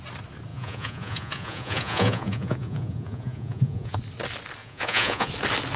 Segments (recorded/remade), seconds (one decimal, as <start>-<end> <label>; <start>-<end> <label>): 0.0-0.5 recorded; 0.5-4.0 remade; 4.0-4.6 recorded; 4.6-5.3 remade; 5.3-5.8 recorded